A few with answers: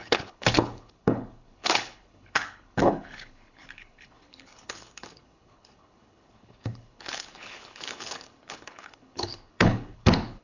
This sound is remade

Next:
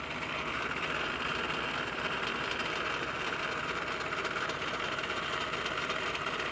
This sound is recorded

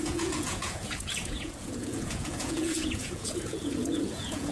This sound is remade